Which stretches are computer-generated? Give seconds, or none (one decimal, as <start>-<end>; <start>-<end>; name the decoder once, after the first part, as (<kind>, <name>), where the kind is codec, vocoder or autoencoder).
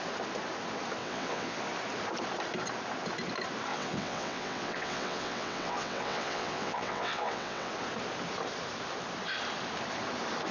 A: 1.0-1.6 (vocoder, WaveNeXt); 3.7-7.7